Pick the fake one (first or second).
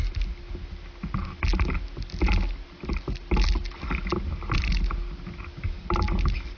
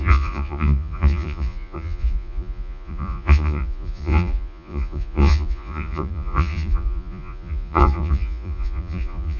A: second